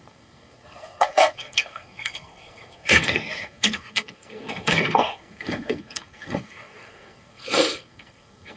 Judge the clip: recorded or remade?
remade